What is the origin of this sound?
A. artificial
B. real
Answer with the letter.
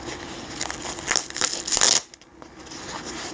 B